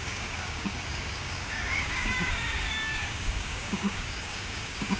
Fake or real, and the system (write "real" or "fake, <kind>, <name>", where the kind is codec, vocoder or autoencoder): fake, codec, DAC